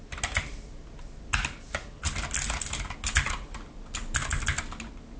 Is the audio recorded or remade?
recorded